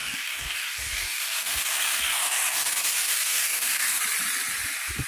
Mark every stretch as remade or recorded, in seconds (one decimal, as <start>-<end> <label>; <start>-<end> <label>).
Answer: 0.0-4.0 remade; 4.0-5.1 recorded